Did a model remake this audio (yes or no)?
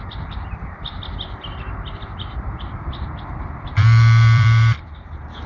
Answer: yes